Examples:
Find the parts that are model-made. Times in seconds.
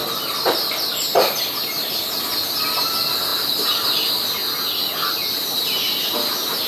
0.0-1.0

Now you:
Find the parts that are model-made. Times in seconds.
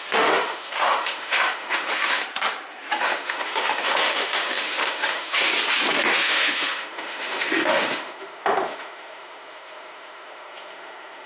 0.0-2.2; 3.0-5.5; 6.0-11.3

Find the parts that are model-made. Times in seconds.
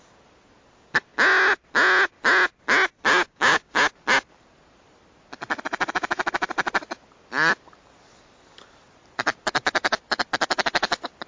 3.1-3.8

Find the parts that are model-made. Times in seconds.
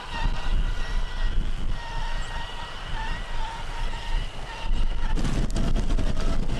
none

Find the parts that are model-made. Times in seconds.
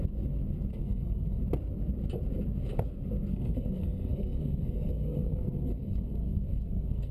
0.7-1.4; 3.3-7.1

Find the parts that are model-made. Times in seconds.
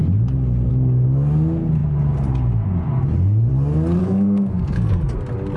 4.0-5.1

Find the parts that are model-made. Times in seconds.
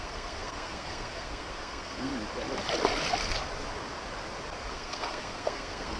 0.0-2.1; 4.7-6.0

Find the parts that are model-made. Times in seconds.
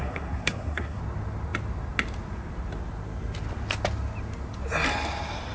0.0-1.0